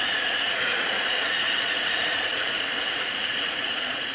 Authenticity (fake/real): fake